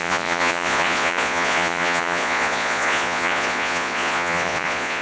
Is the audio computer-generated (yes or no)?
yes